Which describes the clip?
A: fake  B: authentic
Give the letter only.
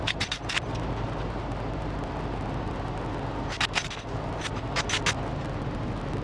B